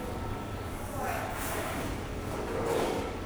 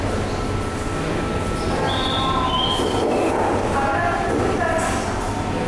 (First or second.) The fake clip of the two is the first